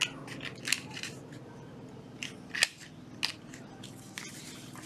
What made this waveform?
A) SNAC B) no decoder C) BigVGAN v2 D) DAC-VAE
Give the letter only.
B